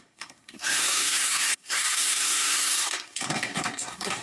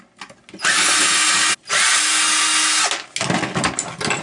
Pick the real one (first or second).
second